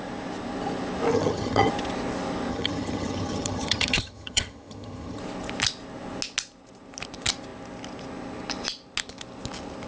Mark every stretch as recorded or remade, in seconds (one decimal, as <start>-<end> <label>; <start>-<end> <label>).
0.0-1.1 recorded; 1.1-1.7 remade; 1.7-2.5 recorded; 2.5-5.2 remade; 5.2-9.9 recorded